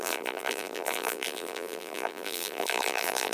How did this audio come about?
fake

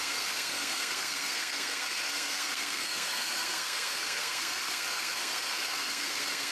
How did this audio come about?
fake